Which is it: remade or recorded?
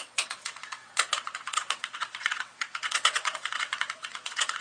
remade